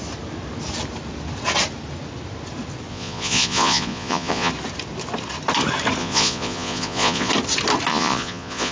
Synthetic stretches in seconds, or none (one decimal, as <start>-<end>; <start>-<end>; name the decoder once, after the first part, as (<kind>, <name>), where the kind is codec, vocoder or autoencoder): 2.9-4.5 (vocoder, Vocos); 6.0-7.3; 7.9-8.7